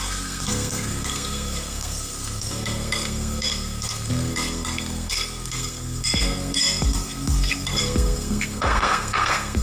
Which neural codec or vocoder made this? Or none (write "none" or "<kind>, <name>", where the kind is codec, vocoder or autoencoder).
codec, SNAC